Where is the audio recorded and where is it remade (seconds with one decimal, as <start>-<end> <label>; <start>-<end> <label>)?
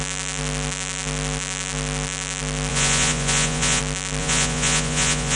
0.0-2.7 recorded; 2.7-3.8 remade; 3.8-4.2 recorded; 4.2-5.4 remade